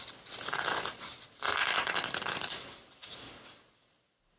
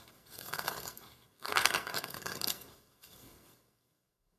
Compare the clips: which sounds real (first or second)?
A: first